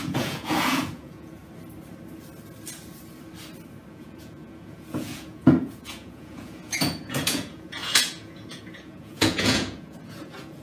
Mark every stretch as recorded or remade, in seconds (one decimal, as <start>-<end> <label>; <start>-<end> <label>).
0.0-1.4 remade; 1.4-3.9 recorded; 3.9-10.6 remade